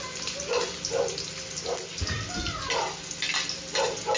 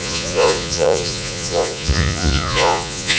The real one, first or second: first